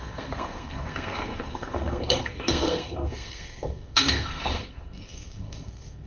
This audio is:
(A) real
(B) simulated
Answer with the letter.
B